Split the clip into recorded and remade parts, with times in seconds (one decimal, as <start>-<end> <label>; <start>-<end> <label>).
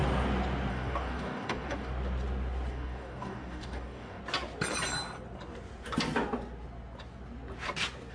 0.0-0.7 recorded; 0.7-1.9 remade; 1.9-2.7 recorded; 2.7-4.2 remade; 4.2-8.1 recorded